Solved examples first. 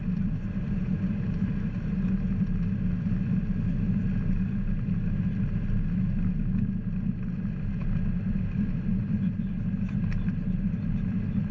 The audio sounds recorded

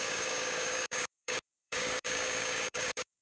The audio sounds remade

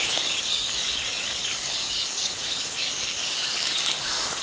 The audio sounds remade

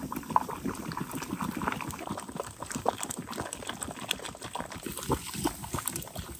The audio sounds recorded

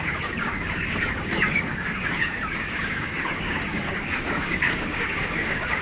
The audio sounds remade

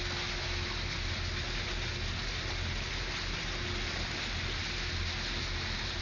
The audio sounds recorded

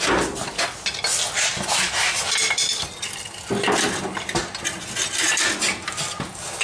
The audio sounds recorded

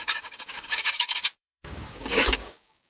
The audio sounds remade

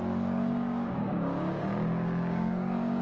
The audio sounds remade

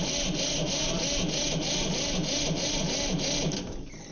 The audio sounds recorded